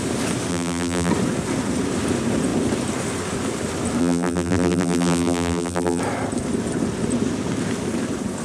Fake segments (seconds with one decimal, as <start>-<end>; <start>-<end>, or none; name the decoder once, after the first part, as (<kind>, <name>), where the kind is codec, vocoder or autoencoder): 0.5-1.1 (vocoder, BigVGAN v2); 4.0-6.0